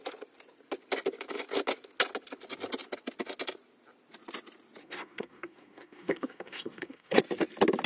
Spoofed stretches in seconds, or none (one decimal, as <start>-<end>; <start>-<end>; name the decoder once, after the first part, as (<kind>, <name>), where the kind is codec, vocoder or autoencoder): 4.8-7.2 (codec, SNAC)